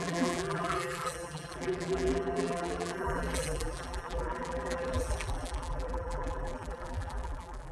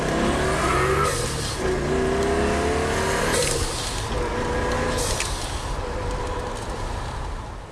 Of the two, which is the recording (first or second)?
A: second